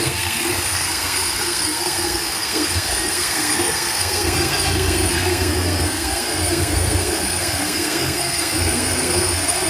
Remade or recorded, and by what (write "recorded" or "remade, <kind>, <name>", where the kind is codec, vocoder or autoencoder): remade, codec, SNAC